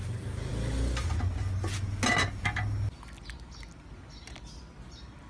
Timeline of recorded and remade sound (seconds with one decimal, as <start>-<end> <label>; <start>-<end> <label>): 0.0-5.3 recorded